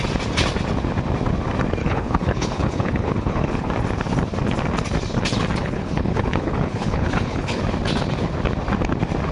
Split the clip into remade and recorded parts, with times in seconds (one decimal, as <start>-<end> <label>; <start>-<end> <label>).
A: 0.0-1.8 recorded; 1.8-3.7 remade; 3.7-5.6 recorded; 5.6-7.6 remade; 7.6-9.3 recorded